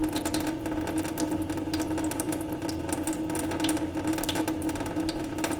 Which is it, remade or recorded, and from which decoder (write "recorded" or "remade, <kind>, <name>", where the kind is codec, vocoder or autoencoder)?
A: recorded